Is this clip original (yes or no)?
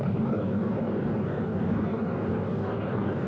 no